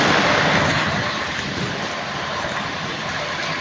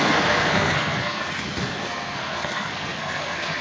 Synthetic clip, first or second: second